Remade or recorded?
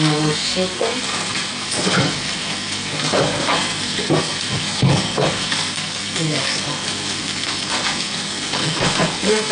remade